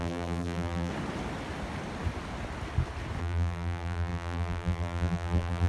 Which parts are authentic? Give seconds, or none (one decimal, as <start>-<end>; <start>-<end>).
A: 0.9-3.2